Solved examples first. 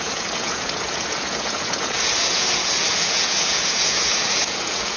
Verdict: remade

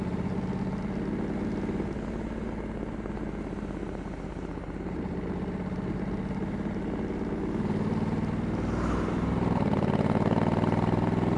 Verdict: recorded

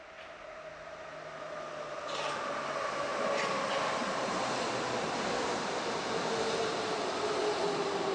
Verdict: recorded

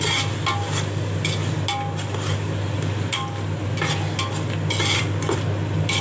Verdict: recorded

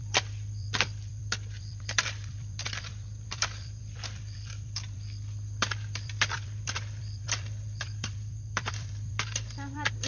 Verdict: remade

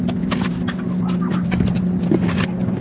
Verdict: recorded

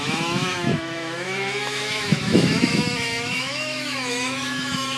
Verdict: remade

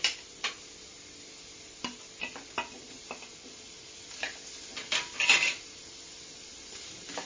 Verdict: recorded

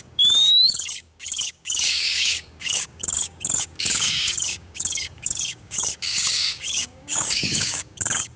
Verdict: remade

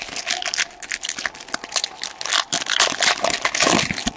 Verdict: recorded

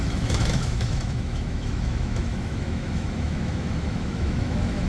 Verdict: remade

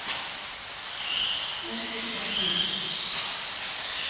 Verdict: recorded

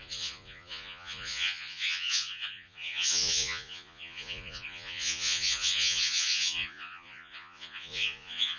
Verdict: remade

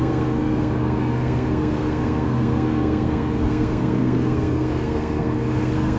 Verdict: remade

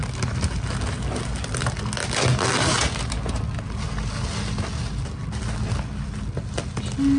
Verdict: recorded